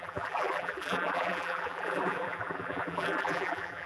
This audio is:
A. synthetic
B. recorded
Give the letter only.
A